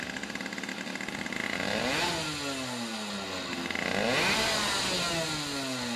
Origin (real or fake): real